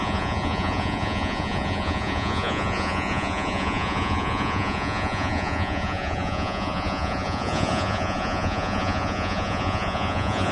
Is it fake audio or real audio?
fake